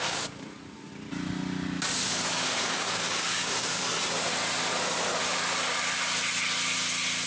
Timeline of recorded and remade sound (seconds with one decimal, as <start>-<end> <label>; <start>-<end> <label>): 0.0-0.9 remade; 0.9-2.1 recorded; 2.1-3.9 remade; 3.9-7.3 recorded